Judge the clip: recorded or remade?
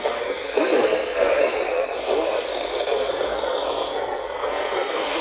remade